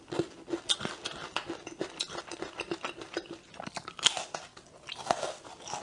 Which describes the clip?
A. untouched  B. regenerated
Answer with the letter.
A